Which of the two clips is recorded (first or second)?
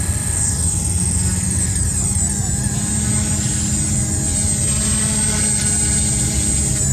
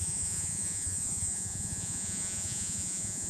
first